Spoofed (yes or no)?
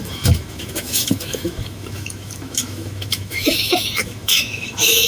yes